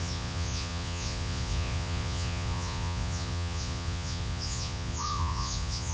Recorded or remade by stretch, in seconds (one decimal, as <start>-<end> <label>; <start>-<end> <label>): 0.0-5.9 remade